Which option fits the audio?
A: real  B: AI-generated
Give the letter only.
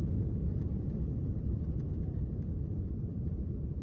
B